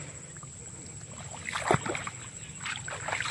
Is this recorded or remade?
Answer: recorded